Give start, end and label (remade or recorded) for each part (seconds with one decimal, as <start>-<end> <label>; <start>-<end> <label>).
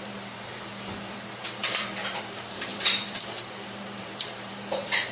0.0-5.1 remade